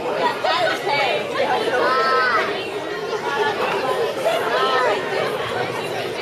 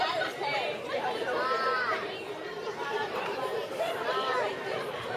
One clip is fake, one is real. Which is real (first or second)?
first